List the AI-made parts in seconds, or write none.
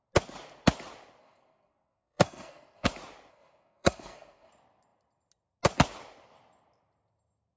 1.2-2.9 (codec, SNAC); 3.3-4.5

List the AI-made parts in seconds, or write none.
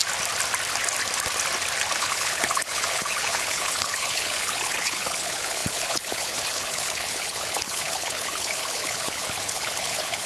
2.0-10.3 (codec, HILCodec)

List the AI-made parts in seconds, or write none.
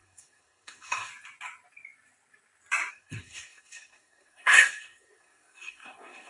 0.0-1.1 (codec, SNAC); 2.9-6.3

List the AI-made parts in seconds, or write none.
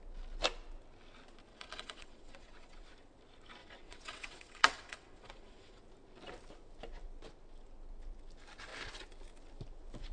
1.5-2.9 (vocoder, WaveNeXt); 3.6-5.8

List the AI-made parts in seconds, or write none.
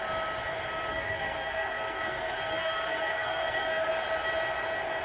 0.9-3.9 (codec, SNAC)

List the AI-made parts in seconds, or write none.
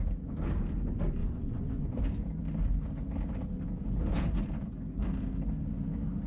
1.2-2.0 (vocoder, Vocos)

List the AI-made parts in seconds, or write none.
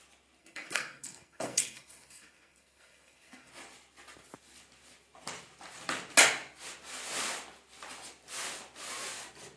0.4-3.5 (codec, SNAC)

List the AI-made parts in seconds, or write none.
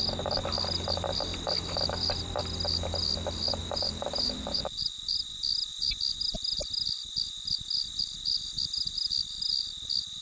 3.6-5.1 (vocoder, BigVGAN v2)